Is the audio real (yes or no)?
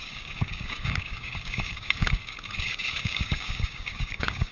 no